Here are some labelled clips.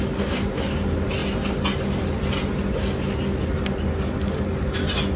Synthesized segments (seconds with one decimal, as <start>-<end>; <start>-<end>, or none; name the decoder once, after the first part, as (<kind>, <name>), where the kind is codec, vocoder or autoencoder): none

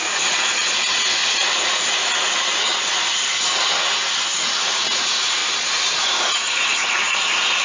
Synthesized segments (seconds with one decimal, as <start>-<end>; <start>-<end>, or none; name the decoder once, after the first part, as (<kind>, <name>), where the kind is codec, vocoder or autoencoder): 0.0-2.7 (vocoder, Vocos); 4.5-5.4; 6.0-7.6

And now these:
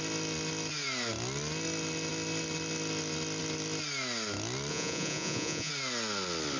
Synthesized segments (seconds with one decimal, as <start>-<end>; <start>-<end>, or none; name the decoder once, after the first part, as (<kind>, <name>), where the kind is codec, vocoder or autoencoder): 4.7-5.7 (vocoder, Vocos)

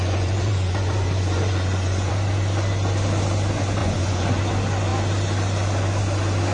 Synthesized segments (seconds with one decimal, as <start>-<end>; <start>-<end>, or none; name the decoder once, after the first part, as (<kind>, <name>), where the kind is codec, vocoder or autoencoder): 0.0-2.1 (vocoder, Vocos); 3.8-4.4

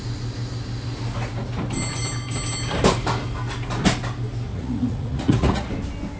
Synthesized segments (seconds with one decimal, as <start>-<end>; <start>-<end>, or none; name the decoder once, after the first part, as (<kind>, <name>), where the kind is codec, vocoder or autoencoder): 4.5-5.7 (vocoder, Vocos)

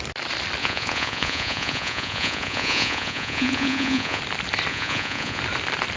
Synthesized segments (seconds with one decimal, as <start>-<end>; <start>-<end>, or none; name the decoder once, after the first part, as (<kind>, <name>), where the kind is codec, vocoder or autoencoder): 0.6-4.2 (vocoder, Vocos); 4.7-5.4